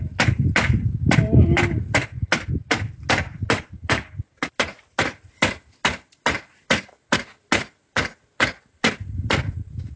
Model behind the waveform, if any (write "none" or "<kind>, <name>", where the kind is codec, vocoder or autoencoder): none